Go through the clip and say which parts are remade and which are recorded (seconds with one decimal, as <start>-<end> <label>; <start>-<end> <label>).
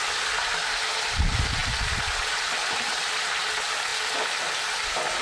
0.0-5.2 recorded